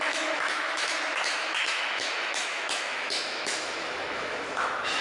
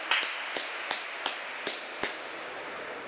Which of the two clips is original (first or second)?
second